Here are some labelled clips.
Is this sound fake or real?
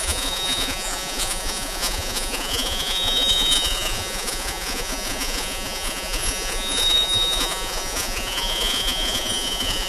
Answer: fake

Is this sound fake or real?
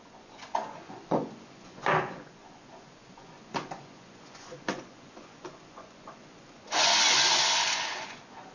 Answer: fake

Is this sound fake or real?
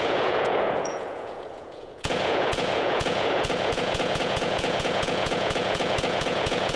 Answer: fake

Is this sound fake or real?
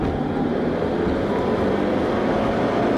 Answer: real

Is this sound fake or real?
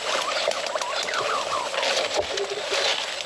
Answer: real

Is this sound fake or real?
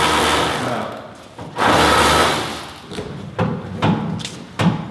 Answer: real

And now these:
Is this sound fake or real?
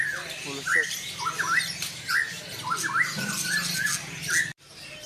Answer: real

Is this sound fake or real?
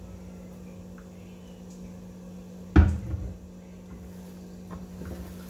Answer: real